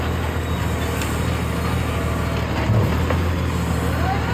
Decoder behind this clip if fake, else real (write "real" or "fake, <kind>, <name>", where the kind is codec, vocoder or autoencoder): real